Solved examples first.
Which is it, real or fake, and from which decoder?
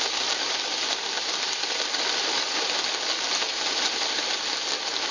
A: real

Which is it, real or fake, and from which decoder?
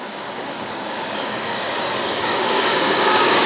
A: fake, codec, DAC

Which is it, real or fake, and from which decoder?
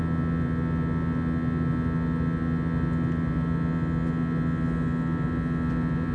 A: real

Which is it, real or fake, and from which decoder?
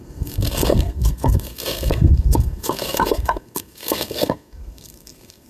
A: fake, codec, SNAC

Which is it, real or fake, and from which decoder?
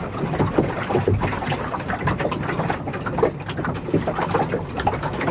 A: real